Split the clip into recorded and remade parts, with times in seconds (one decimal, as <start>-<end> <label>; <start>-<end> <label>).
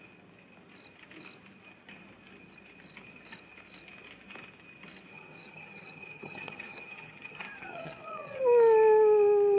0.0-5.1 recorded; 5.1-8.4 remade; 8.4-9.6 recorded